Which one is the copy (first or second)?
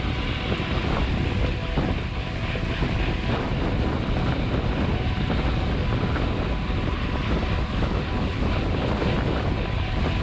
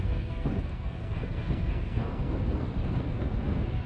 second